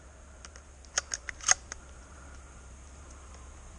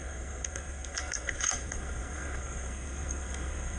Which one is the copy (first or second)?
second